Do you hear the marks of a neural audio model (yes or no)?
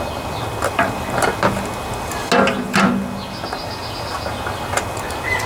no